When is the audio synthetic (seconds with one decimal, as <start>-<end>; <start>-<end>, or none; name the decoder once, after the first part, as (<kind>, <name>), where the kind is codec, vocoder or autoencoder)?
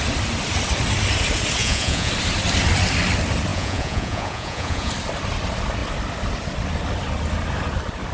1.6-2.1 (vocoder, Vocos); 3.5-4.9